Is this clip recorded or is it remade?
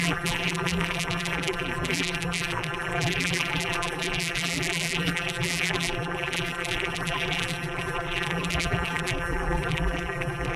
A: remade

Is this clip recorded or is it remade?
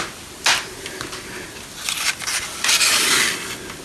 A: recorded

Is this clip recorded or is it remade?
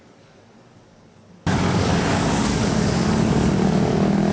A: remade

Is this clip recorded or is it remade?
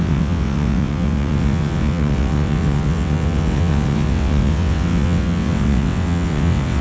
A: remade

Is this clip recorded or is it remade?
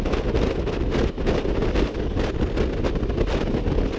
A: recorded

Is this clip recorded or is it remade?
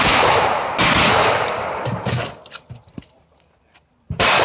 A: recorded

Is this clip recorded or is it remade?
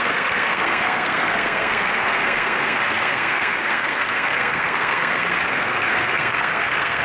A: remade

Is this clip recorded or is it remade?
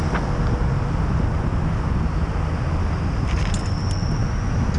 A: recorded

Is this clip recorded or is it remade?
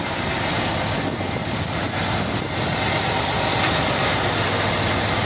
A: recorded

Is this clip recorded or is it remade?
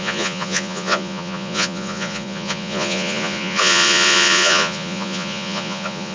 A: remade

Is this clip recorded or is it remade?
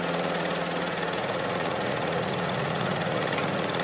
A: remade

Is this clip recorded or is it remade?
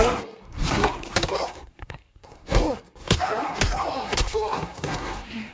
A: remade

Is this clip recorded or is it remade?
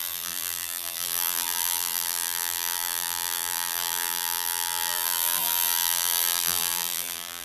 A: remade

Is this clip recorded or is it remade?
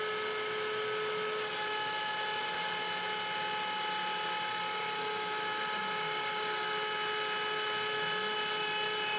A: recorded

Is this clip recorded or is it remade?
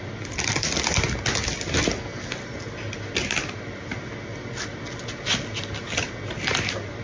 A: recorded